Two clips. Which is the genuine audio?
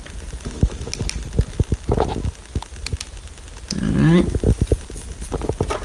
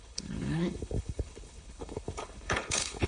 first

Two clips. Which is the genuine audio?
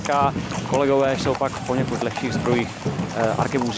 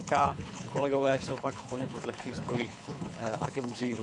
first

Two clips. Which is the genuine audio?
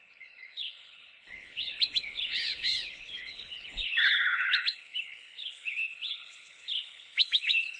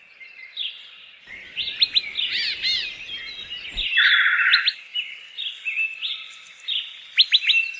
second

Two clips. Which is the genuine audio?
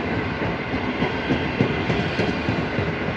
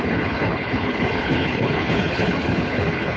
first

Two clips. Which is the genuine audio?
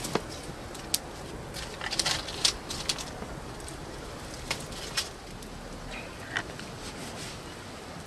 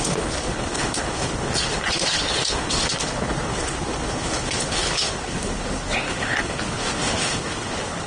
first